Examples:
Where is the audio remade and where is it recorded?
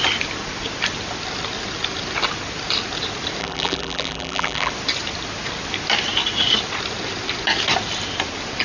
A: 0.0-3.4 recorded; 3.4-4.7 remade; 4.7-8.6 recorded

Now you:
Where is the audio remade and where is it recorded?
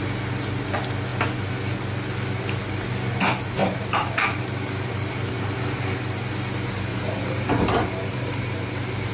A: 0.0-3.6 recorded; 3.6-5.8 remade; 5.8-6.9 recorded; 6.9-9.1 remade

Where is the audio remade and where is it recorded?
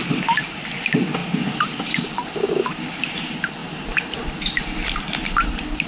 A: 0.0-3.6 remade; 3.6-4.6 recorded; 4.6-5.9 remade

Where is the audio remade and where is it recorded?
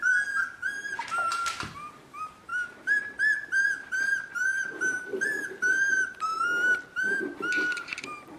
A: 0.0-5.1 recorded; 5.1-8.4 remade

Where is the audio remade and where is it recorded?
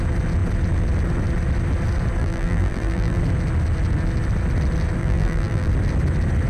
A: 0.0-2.2 recorded; 2.2-3.2 remade; 3.2-5.0 recorded; 5.0-5.7 remade; 5.7-6.5 recorded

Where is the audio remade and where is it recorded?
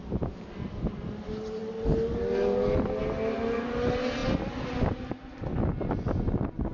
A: 0.0-6.7 recorded